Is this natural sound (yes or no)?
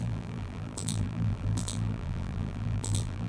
no